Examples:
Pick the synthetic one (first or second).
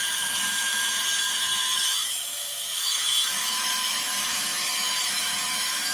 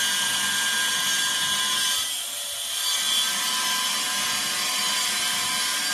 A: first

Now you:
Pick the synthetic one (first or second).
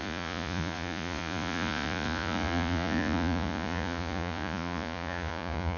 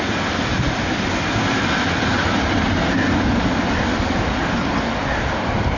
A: first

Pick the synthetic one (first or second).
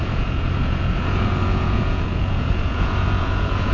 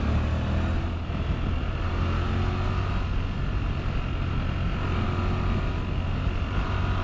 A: first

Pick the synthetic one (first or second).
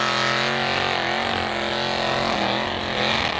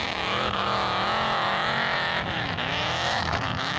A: second